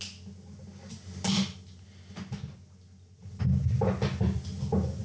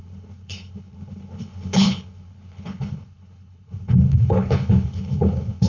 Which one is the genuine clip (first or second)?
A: first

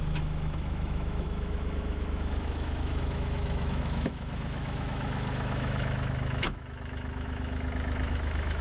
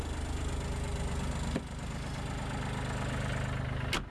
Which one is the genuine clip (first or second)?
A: second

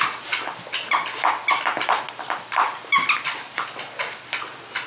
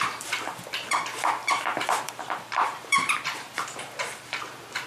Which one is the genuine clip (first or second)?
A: first